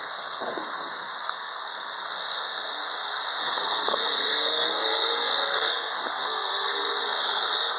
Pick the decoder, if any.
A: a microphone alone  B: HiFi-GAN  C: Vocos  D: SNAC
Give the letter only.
D